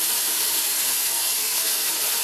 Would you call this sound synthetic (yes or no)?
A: yes